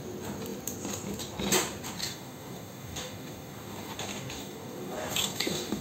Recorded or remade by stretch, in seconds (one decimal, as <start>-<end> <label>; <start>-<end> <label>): 0.0-2.0 recorded; 2.0-5.8 remade